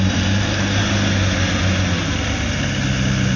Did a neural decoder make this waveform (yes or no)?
no